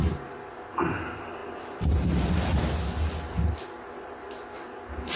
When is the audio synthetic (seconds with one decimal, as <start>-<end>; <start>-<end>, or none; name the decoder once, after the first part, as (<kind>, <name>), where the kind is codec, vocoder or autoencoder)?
none